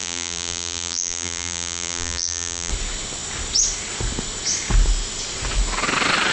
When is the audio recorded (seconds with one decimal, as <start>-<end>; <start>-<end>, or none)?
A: 2.7-6.3